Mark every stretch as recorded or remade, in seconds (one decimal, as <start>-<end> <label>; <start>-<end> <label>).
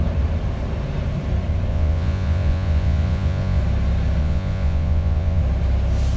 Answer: 0.0-1.7 recorded; 1.7-3.6 remade; 3.6-4.2 recorded; 4.2-5.4 remade; 5.4-6.2 recorded